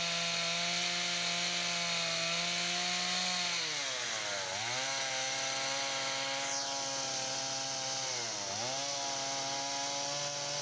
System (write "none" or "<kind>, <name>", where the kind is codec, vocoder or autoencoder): none